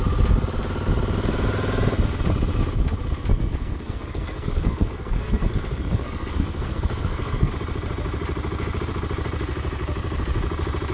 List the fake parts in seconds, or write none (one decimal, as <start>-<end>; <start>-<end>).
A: 3.3-7.5